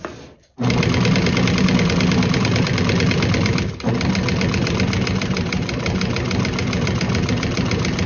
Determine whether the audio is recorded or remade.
remade